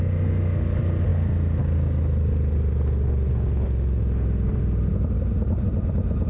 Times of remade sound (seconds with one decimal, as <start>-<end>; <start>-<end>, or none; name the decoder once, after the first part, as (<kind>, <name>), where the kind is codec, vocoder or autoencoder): none